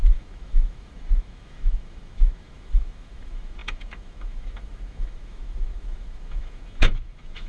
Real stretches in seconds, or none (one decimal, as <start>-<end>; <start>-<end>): none